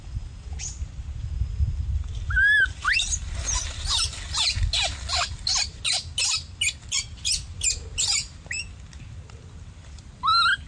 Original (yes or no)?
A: yes